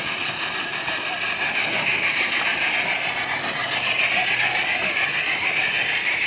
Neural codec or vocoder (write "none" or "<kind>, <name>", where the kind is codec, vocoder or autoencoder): none